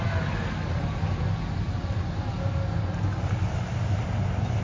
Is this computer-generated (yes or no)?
no